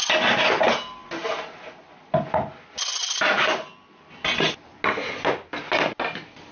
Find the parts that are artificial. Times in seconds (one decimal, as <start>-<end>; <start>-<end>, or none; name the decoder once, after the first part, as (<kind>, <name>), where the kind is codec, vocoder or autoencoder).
none